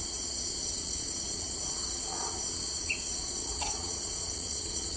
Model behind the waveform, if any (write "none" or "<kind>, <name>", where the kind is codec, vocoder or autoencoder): vocoder, Vocos